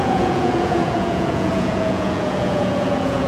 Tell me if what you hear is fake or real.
fake